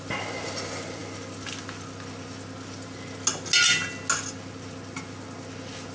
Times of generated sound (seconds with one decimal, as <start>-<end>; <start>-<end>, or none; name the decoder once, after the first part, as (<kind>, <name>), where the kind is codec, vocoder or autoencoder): none